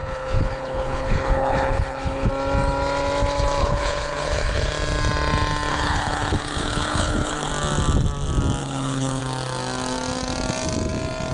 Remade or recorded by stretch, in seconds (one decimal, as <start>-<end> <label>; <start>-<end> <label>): 0.0-2.3 remade; 2.3-3.6 recorded; 3.6-4.7 remade; 4.7-5.7 recorded; 5.7-7.5 remade; 7.5-8.6 recorded; 8.6-9.2 remade; 9.2-11.3 recorded

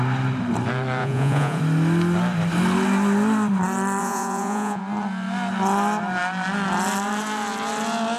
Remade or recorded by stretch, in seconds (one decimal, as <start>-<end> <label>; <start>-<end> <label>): 0.0-1.0 recorded; 1.0-1.6 remade; 1.6-4.0 recorded; 4.0-4.8 remade; 4.8-8.2 recorded

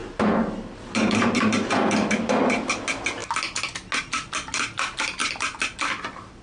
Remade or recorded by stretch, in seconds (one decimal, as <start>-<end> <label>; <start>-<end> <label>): 0.0-2.7 remade; 2.7-5.2 recorded; 5.2-6.0 remade; 6.0-6.4 recorded

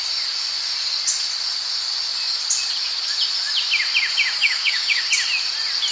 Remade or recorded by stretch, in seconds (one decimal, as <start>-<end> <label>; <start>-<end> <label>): 0.0-4.4 recorded; 4.4-5.0 remade; 5.0-5.9 recorded

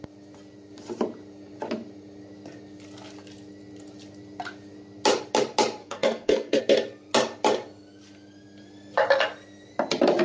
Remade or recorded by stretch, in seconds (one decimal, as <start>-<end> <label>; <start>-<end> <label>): 0.0-5.8 recorded; 5.8-6.6 remade; 6.6-10.2 recorded

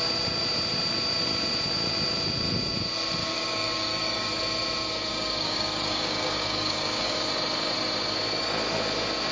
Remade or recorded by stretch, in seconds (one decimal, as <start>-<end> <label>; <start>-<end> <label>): 0.0-3.2 recorded; 3.2-4.3 remade; 4.3-5.1 recorded; 5.1-7.3 remade; 7.3-9.3 recorded